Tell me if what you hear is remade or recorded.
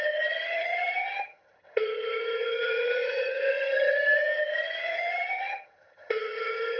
remade